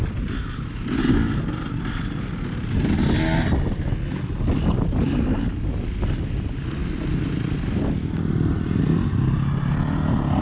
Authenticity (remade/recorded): recorded